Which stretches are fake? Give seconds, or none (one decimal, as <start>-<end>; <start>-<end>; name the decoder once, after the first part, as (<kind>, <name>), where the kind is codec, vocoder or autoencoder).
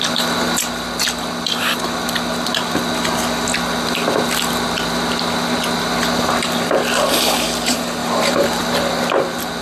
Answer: 8.0-8.6 (vocoder, BigVGAN v2)